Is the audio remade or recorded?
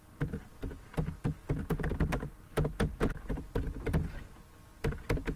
recorded